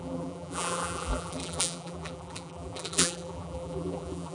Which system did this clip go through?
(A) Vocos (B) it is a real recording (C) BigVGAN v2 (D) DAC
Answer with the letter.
C